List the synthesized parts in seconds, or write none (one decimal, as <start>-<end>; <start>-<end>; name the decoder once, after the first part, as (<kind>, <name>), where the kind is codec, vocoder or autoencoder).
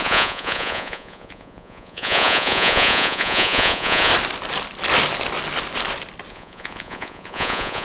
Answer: 0.0-4.1 (vocoder, Vocos); 6.3-7.8